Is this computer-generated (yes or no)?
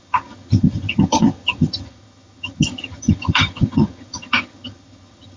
yes